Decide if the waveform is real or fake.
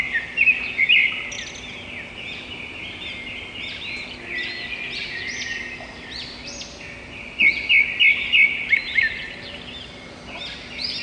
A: real